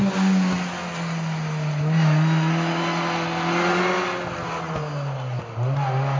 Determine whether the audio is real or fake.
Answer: real